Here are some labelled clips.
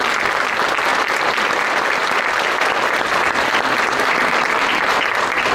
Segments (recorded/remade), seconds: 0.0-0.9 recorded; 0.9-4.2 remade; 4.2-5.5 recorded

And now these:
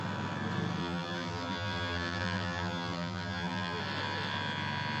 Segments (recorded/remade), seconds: 0.0-0.8 recorded; 0.8-3.8 remade; 3.8-5.0 recorded